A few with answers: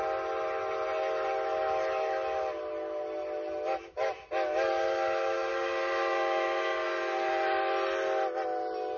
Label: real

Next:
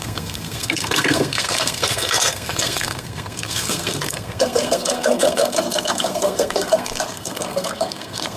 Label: fake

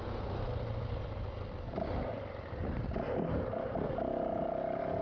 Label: real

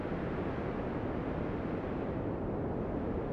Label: real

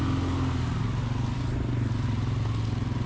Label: real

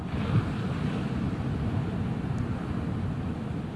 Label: real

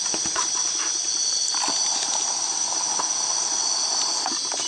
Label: real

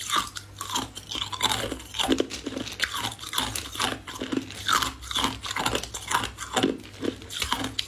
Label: real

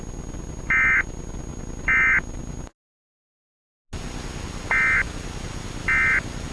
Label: real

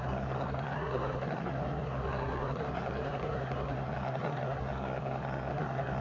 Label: fake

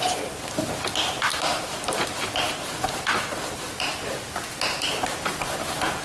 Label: real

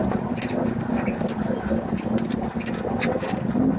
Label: real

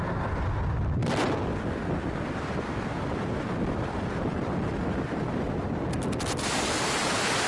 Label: real